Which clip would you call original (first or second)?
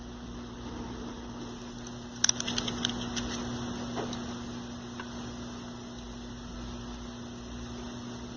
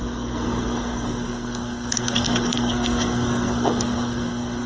first